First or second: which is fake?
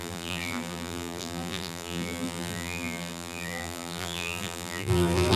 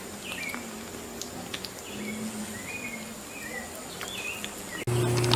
first